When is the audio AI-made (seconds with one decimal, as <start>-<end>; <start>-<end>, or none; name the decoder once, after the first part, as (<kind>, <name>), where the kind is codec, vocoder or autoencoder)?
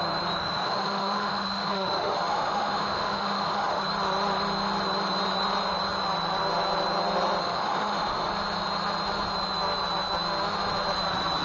0.4-3.8 (autoencoder, DAC-VAE); 7.4-8.3